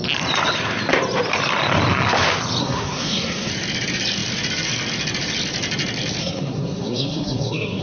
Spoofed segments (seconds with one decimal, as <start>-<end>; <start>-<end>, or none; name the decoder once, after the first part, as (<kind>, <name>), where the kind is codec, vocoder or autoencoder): 2.6-3.5 (codec, SNAC); 6.2-7.8